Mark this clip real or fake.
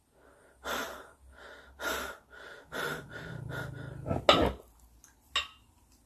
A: real